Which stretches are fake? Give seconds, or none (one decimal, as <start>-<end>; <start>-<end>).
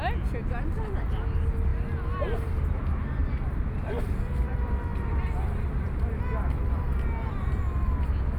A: 3.2-4.5; 4.9-6.2